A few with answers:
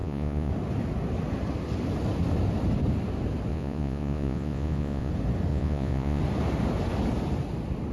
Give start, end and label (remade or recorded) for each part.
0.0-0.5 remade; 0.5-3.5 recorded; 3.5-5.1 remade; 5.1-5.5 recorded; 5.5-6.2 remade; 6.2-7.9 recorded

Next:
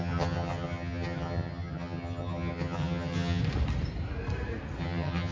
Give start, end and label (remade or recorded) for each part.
0.0-3.4 remade; 3.4-4.8 recorded; 4.8-5.3 remade